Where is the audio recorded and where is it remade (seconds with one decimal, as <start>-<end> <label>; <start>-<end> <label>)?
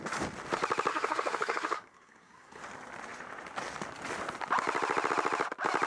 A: 0.0-0.9 recorded; 0.9-2.6 remade; 2.6-5.9 recorded